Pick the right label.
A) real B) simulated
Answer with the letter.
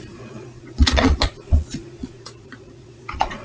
B